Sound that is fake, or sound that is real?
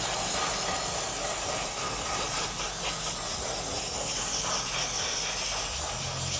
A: real